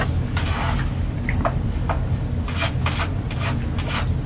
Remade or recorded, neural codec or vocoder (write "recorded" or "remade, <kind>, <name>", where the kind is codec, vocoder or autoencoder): recorded